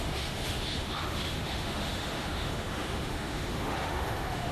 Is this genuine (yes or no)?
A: no